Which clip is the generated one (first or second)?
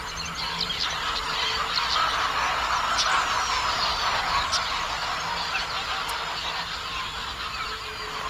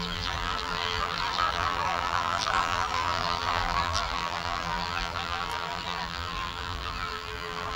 second